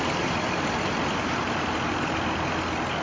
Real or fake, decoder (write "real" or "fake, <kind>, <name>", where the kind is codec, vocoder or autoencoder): real